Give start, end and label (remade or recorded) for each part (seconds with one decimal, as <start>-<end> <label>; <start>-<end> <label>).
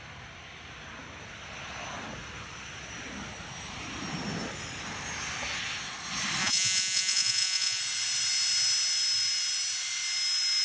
0.0-6.4 recorded; 6.4-7.8 remade; 7.8-10.6 recorded